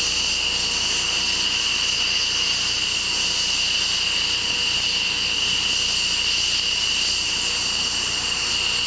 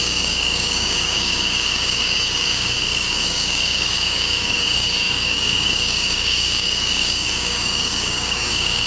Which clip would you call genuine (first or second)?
first